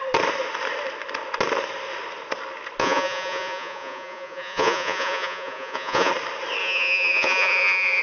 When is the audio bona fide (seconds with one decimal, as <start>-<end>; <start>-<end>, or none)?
0.0-2.8; 6.1-6.6